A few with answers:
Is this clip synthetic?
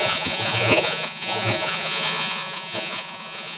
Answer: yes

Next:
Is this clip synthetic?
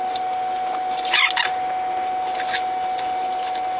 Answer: no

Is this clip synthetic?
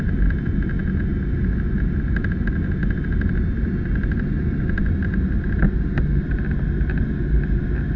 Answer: no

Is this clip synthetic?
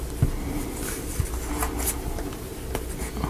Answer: no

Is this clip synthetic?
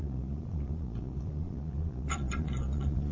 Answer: yes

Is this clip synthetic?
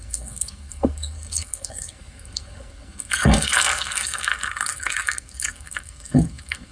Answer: yes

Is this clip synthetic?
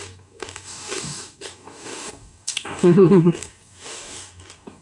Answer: yes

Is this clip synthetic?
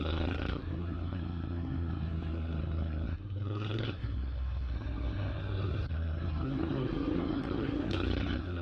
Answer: yes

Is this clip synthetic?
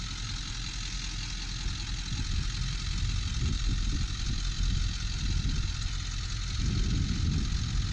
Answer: no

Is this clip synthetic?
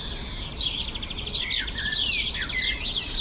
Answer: no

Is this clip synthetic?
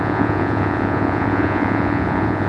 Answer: yes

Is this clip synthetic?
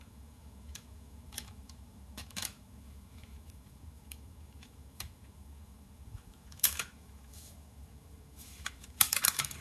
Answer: yes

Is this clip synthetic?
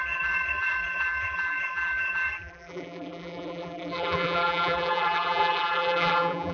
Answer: yes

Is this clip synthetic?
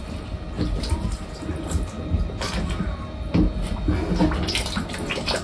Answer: no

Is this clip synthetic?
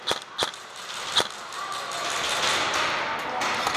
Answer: no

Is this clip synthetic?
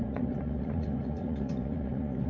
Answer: yes